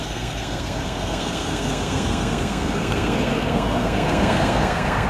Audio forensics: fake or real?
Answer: fake